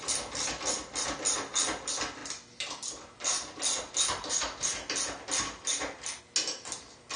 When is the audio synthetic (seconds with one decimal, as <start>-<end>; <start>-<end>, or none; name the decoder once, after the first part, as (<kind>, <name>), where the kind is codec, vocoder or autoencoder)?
none